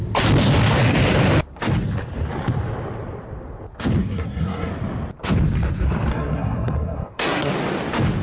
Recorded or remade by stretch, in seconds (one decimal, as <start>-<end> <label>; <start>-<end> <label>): 0.0-4.0 recorded; 4.0-4.7 remade; 4.7-6.1 recorded; 6.1-7.5 remade; 7.5-8.2 recorded